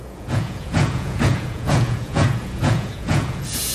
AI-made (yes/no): yes